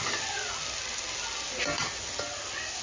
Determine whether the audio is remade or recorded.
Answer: recorded